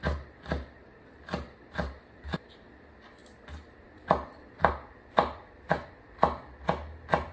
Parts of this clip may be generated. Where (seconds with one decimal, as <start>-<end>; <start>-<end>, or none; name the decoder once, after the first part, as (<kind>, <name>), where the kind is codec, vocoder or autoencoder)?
0.0-2.7 (vocoder, BigVGAN v2); 3.2-4.7